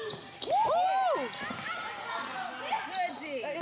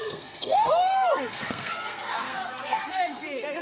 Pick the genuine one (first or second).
first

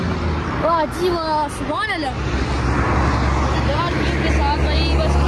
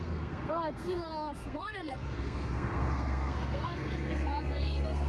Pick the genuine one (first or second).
first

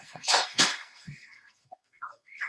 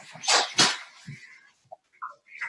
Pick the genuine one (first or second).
second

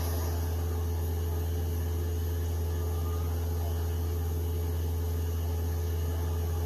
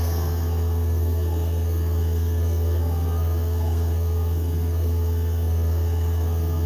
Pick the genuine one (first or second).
first